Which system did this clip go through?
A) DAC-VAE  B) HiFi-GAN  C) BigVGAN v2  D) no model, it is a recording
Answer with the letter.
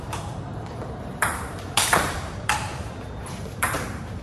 C